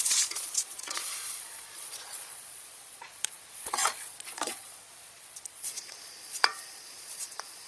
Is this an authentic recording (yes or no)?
no